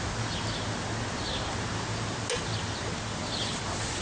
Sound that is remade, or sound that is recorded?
recorded